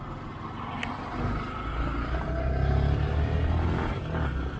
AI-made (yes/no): no